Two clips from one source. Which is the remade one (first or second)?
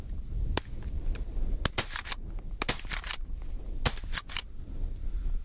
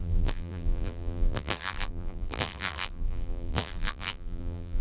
second